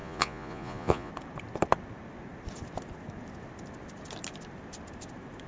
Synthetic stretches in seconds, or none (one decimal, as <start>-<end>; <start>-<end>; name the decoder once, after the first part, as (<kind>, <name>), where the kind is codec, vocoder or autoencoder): 0.0-1.1 (vocoder, Vocos)